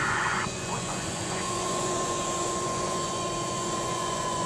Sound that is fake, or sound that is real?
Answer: fake